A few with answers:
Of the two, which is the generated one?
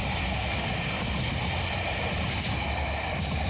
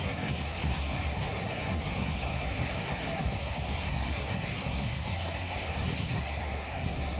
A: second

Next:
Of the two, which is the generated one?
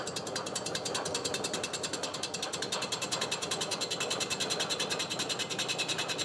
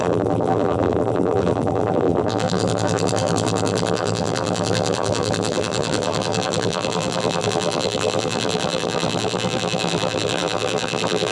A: second